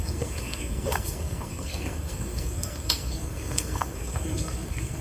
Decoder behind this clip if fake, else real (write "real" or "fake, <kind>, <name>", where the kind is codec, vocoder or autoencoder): fake, codec, SNAC